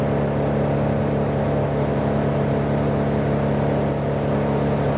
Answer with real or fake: real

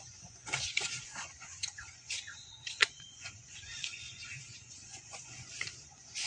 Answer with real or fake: fake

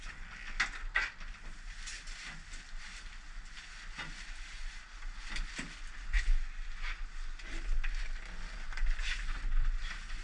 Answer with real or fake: real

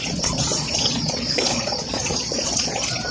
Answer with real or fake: fake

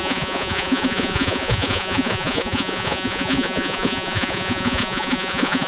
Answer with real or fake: fake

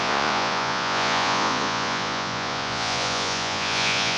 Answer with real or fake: fake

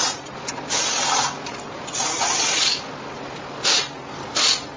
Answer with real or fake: real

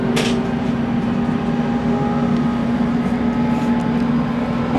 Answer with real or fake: real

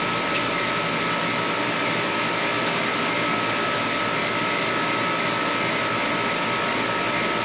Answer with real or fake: real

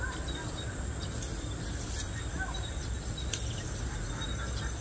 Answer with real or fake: real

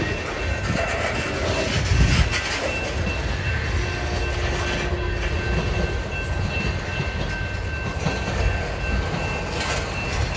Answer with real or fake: real